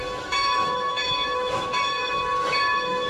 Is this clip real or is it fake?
fake